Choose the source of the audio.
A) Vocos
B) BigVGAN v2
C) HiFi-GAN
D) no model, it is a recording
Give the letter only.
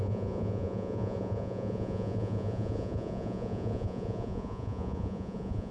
A